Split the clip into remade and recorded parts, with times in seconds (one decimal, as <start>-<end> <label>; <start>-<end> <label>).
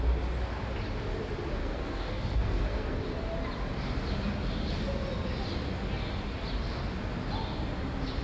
0.0-1.6 recorded; 1.6-3.0 remade; 3.0-8.2 recorded